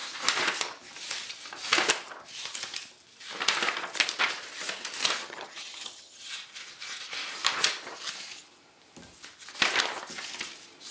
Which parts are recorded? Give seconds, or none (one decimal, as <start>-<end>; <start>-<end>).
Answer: 0.0-5.2; 6.3-10.9